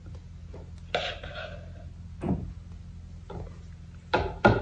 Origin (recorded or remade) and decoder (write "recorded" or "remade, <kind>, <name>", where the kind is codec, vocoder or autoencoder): recorded